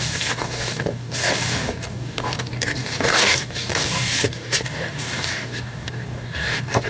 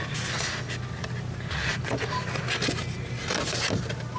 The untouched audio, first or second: second